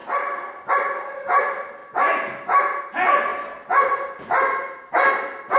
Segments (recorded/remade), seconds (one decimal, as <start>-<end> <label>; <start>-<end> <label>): 0.0-5.6 recorded